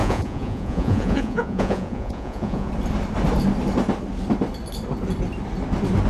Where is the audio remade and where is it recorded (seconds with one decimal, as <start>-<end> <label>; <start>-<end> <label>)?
0.0-2.7 remade; 2.7-6.1 recorded